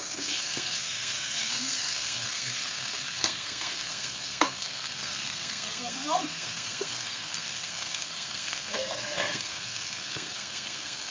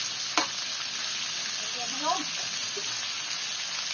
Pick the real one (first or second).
second